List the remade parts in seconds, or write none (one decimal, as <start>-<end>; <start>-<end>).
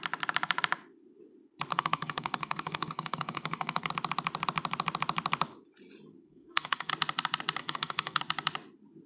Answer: 1.7-3.9; 6.2-6.9; 7.6-8.2